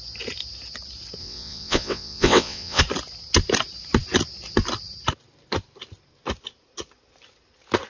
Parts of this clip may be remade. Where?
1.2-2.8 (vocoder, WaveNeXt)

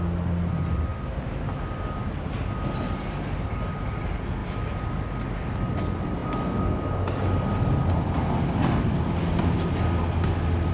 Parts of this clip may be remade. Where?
none

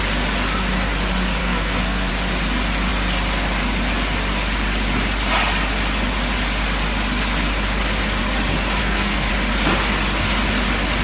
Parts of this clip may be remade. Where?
1.4-2.1 (codec, SNAC); 8.8-9.3

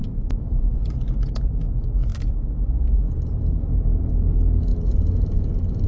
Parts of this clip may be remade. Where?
0.0-1.0 (vocoder, BigVGAN v2); 4.7-5.4

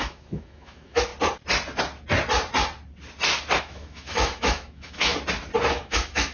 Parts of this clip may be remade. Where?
0.0-1.1 (autoencoder, DAC-VAE); 3.6-5.1; 5.7-6.3

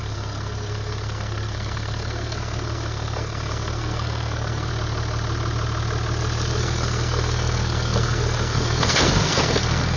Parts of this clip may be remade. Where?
0.0-4.7 (codec, SNAC); 6.6-10.0